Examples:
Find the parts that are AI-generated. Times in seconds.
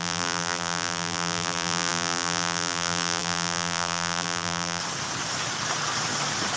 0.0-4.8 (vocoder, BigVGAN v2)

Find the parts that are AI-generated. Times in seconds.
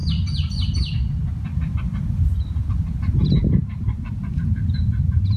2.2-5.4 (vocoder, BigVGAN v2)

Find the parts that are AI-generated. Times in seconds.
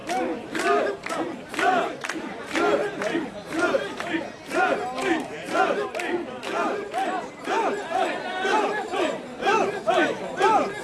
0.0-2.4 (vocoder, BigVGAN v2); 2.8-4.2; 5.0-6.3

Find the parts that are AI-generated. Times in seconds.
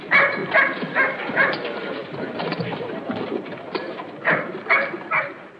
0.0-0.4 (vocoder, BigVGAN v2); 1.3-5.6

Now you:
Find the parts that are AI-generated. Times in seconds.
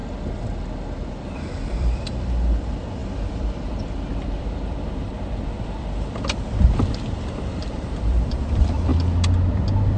1.1-8.9 (vocoder, BigVGAN v2)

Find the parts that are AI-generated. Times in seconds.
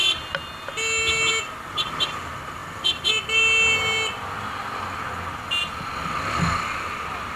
none